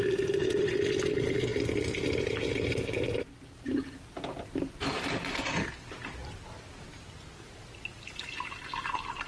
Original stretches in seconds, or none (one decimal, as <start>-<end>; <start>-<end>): 6.2-6.8